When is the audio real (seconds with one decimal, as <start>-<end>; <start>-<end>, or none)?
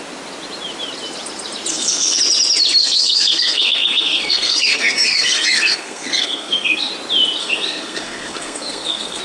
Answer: 0.0-1.7; 2.2-2.8; 6.9-7.4